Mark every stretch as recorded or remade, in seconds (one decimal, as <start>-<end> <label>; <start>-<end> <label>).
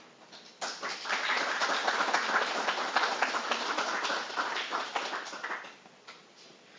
0.0-6.8 recorded